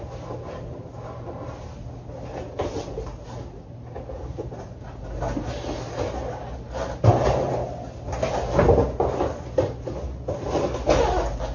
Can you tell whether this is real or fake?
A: real